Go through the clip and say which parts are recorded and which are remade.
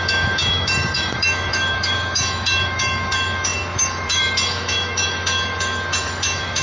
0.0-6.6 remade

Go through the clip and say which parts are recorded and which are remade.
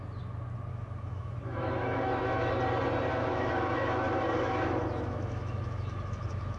0.0-0.7 recorded; 0.7-2.5 remade; 2.5-3.1 recorded; 3.1-6.6 remade